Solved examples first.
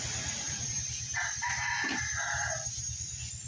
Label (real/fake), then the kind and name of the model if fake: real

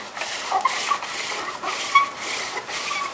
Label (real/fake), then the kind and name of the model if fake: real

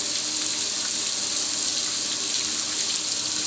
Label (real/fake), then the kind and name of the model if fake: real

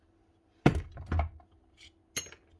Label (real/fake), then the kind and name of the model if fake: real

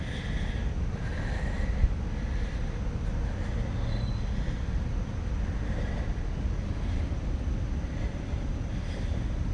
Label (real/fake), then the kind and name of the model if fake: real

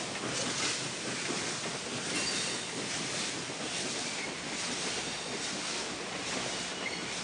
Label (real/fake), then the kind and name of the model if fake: real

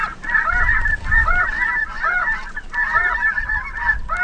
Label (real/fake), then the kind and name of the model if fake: real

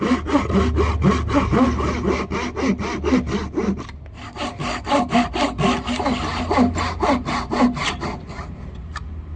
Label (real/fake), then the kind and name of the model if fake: real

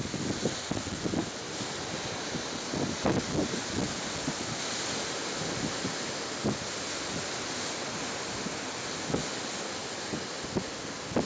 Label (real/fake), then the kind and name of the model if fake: real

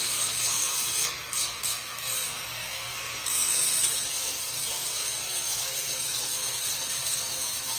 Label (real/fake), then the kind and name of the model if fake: fake, codec, SNAC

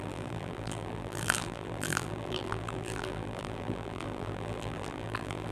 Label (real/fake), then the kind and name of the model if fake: fake, vocoder, BigVGAN v2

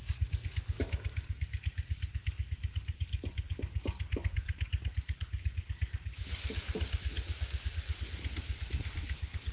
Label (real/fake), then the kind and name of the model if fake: real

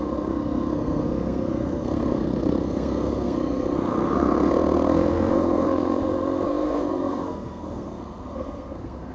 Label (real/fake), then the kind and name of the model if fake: fake, codec, SNAC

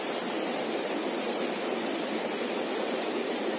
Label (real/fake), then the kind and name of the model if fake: real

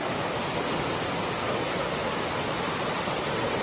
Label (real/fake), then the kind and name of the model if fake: real